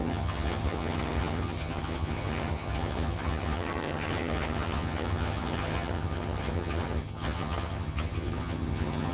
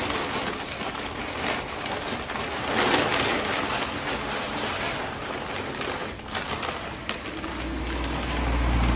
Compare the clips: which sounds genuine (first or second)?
second